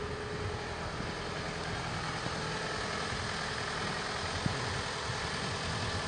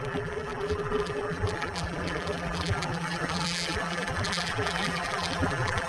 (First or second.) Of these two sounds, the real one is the first